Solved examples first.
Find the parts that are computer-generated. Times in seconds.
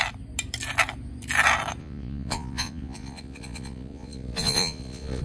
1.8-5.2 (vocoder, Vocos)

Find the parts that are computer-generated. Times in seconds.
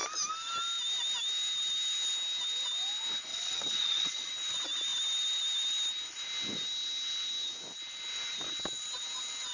3.3-4.3 (vocoder, WaveNeXt)